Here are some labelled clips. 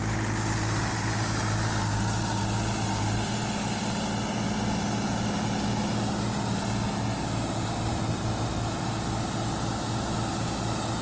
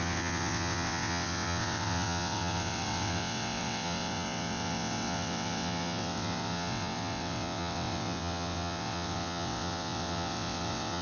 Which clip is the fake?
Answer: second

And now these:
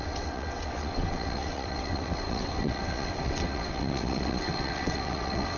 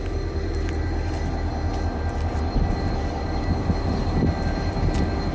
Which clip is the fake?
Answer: first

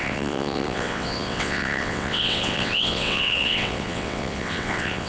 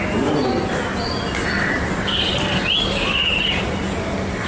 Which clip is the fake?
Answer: first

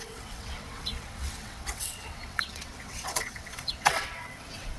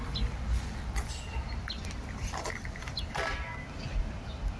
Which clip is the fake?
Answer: first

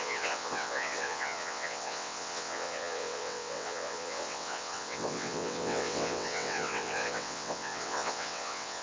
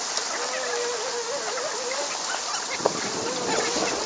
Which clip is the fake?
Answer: first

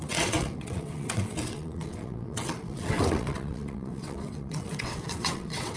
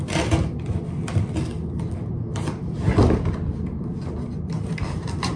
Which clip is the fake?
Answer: first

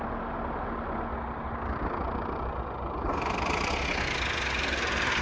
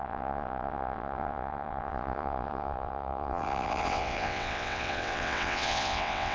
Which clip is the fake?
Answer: second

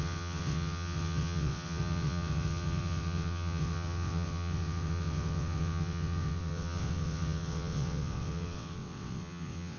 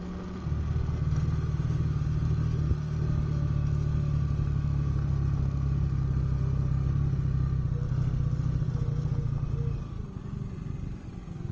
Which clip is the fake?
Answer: first